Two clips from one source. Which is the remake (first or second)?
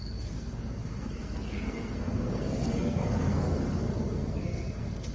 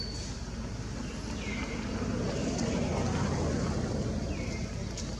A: first